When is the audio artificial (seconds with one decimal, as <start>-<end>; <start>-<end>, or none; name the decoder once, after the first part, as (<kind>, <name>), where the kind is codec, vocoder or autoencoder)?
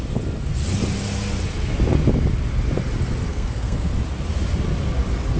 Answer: 3.3-3.9 (codec, SNAC)